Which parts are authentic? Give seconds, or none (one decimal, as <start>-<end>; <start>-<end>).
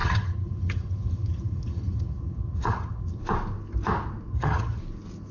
3.2-4.3; 4.8-5.3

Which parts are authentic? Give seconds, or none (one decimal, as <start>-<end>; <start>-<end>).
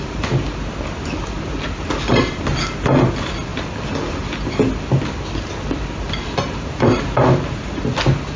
0.0-8.4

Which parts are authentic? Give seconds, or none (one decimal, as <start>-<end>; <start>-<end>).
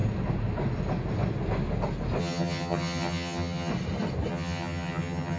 0.0-2.2; 3.7-4.3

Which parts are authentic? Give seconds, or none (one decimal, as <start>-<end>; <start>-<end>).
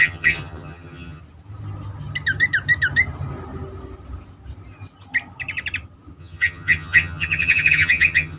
1.2-6.2